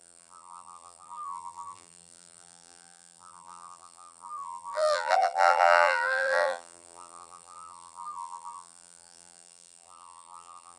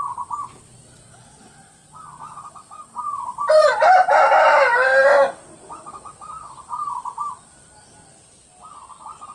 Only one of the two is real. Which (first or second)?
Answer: second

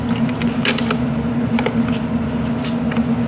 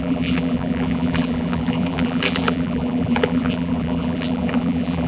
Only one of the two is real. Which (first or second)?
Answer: first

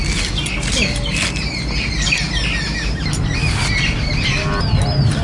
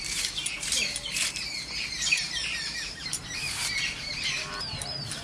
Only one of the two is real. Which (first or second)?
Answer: first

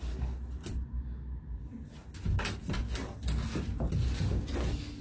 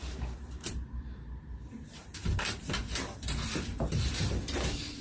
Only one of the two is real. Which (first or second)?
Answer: first